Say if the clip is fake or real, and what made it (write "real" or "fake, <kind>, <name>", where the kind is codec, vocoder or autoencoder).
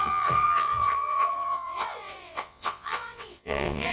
fake, vocoder, WaveNeXt